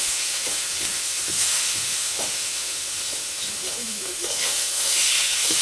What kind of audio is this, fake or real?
fake